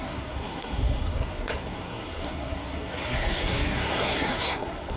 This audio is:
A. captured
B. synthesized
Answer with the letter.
B